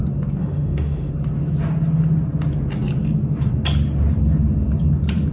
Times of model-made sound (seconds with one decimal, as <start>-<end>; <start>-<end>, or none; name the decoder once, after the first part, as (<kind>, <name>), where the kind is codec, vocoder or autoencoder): 0.4-1.1 (autoencoder, DAC-VAE)

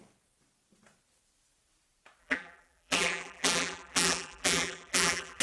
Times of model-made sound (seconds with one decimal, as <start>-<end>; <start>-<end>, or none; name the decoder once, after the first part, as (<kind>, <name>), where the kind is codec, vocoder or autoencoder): 2.2-5.4 (vocoder, BigVGAN v2)

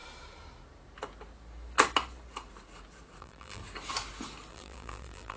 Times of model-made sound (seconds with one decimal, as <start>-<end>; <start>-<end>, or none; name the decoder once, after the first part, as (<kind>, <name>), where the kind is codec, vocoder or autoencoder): 3.2-3.6 (vocoder, BigVGAN v2); 4.5-5.4

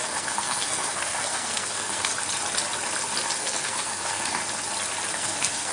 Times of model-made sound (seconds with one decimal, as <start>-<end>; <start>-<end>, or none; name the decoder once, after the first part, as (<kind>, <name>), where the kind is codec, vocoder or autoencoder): 0.0-2.1 (codec, SNAC); 3.4-4.4; 5.1-5.7

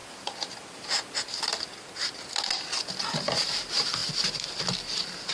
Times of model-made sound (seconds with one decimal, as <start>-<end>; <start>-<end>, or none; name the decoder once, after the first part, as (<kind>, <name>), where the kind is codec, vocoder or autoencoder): none

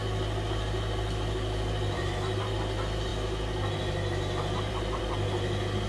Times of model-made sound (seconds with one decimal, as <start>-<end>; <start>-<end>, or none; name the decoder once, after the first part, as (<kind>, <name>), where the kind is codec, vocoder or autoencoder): none

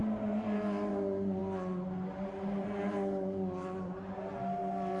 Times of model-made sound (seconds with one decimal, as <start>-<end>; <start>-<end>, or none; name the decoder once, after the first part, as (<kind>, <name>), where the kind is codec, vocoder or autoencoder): none

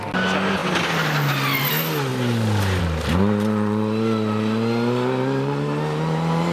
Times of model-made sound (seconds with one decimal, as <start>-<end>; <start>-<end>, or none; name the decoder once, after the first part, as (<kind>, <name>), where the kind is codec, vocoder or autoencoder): none